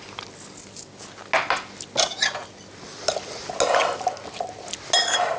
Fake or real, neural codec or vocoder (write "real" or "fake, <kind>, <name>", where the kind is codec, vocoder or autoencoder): real